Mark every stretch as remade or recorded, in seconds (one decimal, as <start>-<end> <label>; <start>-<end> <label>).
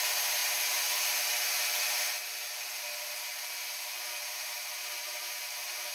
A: 0.0-5.9 recorded